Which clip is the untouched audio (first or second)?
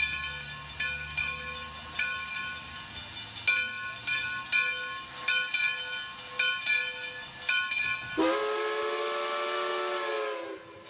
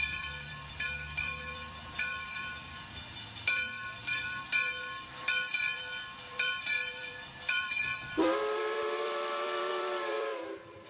first